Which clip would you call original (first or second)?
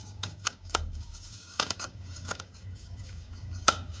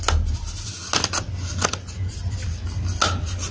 second